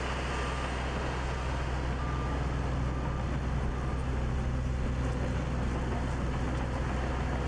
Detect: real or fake real